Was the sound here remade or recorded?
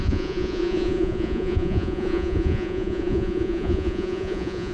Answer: remade